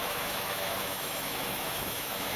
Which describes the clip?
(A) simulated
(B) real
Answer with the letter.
A